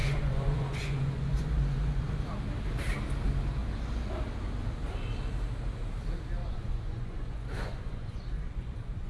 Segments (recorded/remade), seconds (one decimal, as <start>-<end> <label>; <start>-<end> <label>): 0.0-2.1 remade; 2.1-6.4 recorded; 6.4-9.1 remade